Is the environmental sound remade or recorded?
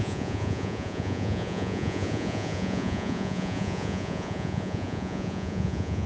remade